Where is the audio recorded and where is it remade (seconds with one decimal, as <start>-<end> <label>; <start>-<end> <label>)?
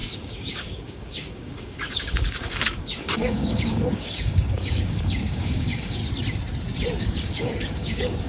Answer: 0.0-6.0 remade; 6.0-7.0 recorded; 7.0-8.3 remade